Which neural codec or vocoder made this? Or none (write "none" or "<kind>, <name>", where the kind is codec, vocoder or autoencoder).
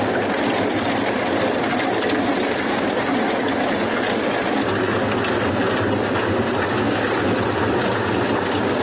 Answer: none